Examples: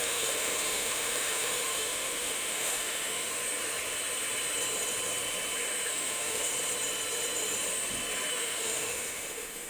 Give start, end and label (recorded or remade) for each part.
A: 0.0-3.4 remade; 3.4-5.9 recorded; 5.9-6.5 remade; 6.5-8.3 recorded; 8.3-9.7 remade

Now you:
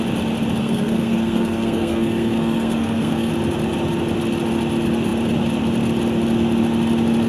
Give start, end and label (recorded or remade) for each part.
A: 0.0-0.6 recorded; 0.6-3.3 remade; 3.3-7.3 recorded

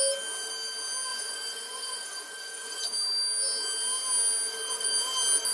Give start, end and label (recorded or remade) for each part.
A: 0.0-1.1 recorded; 1.1-2.8 remade; 2.8-5.5 recorded

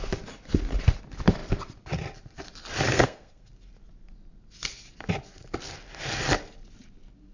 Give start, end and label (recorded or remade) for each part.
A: 0.0-2.9 recorded; 2.9-3.5 remade; 3.5-7.3 recorded